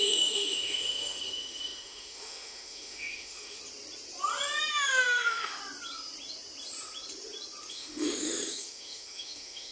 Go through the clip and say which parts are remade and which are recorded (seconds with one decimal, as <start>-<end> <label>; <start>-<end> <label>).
0.0-3.6 remade; 3.6-4.7 recorded; 4.7-5.6 remade; 5.6-7.7 recorded; 7.7-9.7 remade